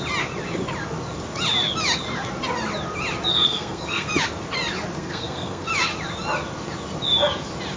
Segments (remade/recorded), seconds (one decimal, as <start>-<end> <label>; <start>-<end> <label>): 0.0-3.3 recorded; 3.3-4.1 remade; 4.1-5.0 recorded; 5.0-5.7 remade; 5.7-7.8 recorded